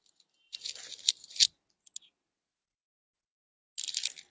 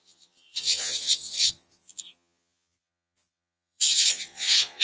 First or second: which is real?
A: first